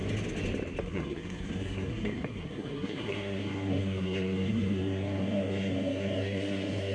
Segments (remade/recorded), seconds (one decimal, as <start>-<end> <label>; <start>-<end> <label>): 0.0-0.8 recorded; 0.8-6.9 remade

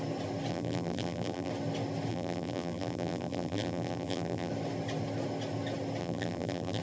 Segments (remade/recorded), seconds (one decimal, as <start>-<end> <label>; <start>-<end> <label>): 0.0-0.5 recorded; 0.5-1.5 remade; 1.5-2.1 recorded; 2.1-4.5 remade; 4.5-6.0 recorded; 6.0-6.8 remade

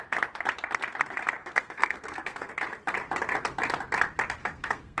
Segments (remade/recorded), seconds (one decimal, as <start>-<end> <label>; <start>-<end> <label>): 0.0-1.4 recorded; 1.4-2.5 remade; 2.5-4.4 recorded; 4.4-5.0 remade

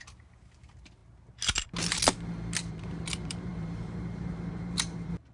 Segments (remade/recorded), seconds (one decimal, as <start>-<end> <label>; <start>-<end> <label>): 0.0-1.0 remade; 1.0-2.7 recorded; 2.7-5.3 remade

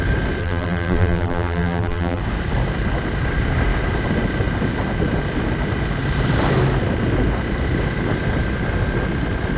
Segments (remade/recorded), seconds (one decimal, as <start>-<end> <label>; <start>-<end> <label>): 0.0-0.4 recorded; 0.4-2.2 remade; 2.2-9.6 recorded

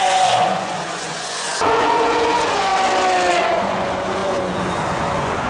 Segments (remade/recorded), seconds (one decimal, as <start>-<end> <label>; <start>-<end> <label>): 0.0-2.7 remade; 2.7-3.3 recorded; 3.3-5.5 remade

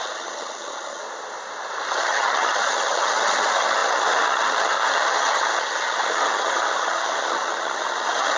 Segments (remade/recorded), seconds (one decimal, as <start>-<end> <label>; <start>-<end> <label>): 0.0-1.0 remade; 1.0-1.9 recorded; 1.9-8.4 remade